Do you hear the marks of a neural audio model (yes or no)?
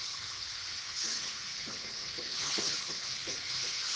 yes